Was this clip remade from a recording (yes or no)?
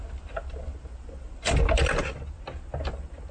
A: no